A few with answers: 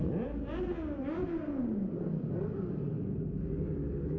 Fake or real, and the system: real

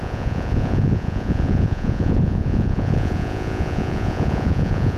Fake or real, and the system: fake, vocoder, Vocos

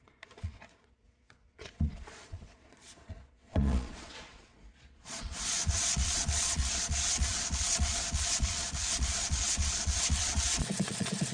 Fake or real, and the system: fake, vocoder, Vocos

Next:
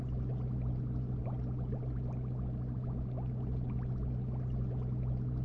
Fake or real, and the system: real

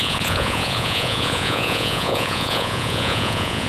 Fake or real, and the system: fake, vocoder, Vocos